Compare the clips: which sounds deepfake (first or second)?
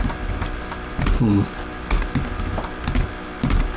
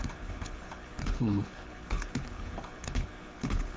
second